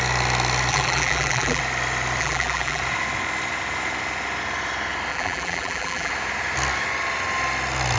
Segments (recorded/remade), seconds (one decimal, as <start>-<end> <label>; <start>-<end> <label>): 0.0-0.7 recorded; 0.7-1.6 remade; 1.6-2.2 recorded; 2.2-2.8 remade; 2.8-5.1 recorded; 5.1-6.1 remade; 6.1-8.0 recorded